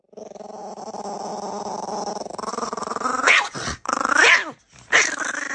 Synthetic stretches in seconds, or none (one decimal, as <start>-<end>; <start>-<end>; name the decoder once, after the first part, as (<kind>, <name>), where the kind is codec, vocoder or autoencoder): 2.5-4.1 (vocoder, Vocos)